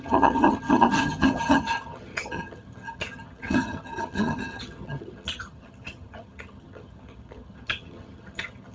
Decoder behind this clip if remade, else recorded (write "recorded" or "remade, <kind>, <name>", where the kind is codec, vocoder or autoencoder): remade, vocoder, HiFi-GAN